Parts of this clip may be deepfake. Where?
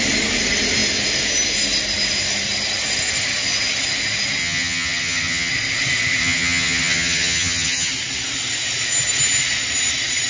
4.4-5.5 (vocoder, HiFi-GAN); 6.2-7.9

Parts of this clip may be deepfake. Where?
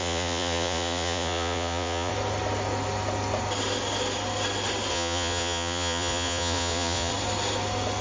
0.0-2.1 (vocoder, Vocos); 4.9-7.1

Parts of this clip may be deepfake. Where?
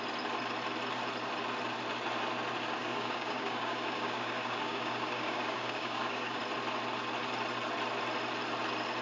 2.8-6.4 (codec, DAC)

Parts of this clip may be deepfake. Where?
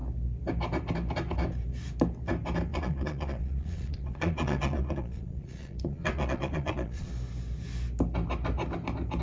2.7-7.1 (vocoder, Vocos)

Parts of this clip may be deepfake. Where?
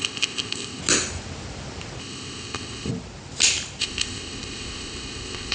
0.0-0.8 (codec, ZipCodec); 2.0-2.9; 3.8-5.5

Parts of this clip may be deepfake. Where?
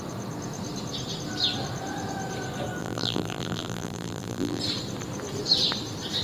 2.8-4.6 (vocoder, BigVGAN v2)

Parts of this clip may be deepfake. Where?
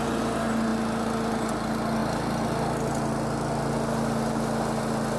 none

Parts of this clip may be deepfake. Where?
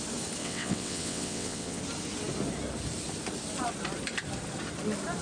0.4-1.8 (vocoder, WaveNeXt)